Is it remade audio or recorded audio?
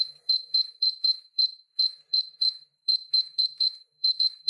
remade